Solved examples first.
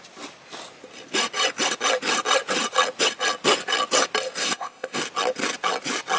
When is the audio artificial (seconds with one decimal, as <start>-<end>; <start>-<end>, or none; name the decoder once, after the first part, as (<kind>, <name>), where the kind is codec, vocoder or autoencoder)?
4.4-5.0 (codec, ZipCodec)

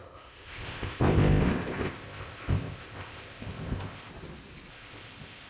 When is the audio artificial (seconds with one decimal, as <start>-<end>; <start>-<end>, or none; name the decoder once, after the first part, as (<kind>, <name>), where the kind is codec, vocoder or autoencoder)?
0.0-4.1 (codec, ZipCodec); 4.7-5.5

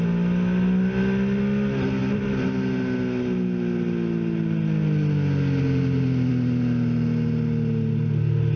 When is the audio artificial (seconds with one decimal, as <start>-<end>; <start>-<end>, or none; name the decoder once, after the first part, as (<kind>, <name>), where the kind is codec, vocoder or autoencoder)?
none

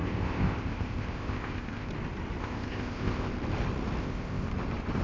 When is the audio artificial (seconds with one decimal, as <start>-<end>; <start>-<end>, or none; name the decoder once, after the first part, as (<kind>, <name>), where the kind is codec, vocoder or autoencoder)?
0.0-1.9 (codec, ZipCodec); 2.4-3.3; 4.0-4.5

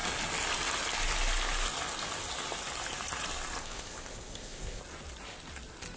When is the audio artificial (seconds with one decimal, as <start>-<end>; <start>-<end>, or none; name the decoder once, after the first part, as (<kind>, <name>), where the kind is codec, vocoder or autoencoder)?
3.6-4.8 (codec, ZipCodec)